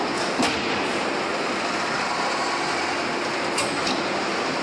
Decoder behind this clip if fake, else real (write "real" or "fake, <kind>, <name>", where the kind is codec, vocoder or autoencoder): real